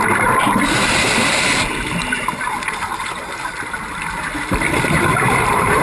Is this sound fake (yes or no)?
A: yes